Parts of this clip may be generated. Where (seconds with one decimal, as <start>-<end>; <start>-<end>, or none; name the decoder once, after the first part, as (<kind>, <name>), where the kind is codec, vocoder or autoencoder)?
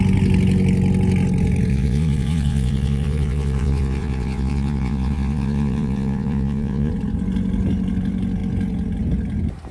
1.7-6.9 (vocoder, Vocos)